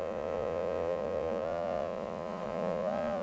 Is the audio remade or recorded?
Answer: remade